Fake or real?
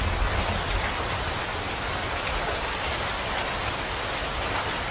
real